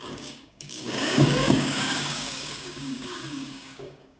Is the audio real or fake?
fake